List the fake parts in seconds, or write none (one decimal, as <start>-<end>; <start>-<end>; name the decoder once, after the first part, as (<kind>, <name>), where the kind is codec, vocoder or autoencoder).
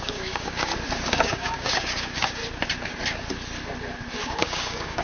0.0-0.7 (codec, DAC); 1.2-2.4; 4.2-5.0